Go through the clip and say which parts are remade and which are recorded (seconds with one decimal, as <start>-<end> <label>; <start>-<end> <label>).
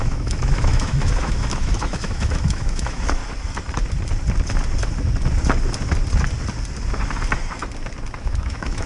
0.0-3.2 remade; 3.2-8.2 recorded; 8.2-8.9 remade